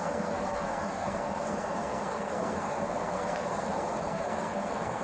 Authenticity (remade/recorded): remade